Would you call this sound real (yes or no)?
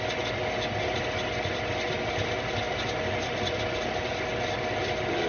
yes